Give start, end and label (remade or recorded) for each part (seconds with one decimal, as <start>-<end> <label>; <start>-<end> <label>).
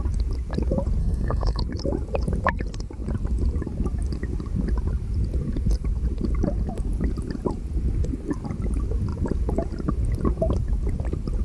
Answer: 0.0-1.0 recorded; 1.0-1.6 remade; 1.6-11.4 recorded